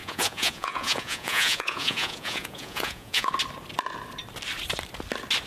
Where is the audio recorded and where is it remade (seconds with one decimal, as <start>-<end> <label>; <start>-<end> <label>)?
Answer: 0.0-3.3 remade; 3.3-5.5 recorded